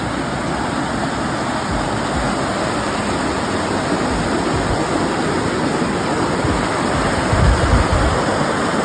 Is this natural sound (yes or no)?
yes